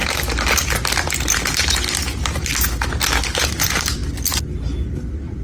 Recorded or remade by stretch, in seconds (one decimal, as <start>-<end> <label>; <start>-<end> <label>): 0.0-5.4 recorded